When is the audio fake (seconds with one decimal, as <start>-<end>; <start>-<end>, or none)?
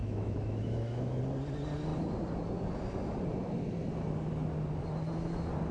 0.0-1.2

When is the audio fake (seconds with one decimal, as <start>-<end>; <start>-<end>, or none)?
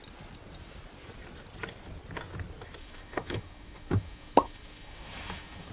2.8-5.7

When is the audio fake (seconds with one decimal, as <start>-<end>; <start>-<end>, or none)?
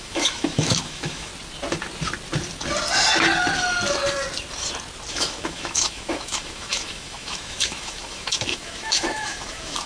0.0-1.3; 5.1-9.9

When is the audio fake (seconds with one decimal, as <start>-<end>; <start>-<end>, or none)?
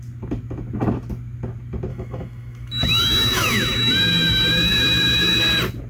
1.9-5.4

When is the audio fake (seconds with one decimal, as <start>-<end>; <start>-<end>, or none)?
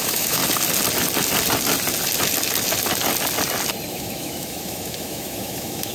0.0-0.4; 3.9-5.9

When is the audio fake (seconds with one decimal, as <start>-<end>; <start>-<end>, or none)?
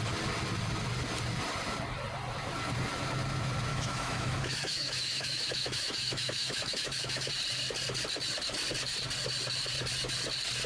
3.7-7.3